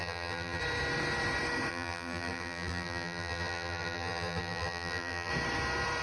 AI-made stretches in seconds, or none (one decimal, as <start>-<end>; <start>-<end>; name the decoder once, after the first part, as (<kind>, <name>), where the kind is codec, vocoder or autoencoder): 0.0-0.6 (vocoder, BigVGAN v2); 1.7-5.3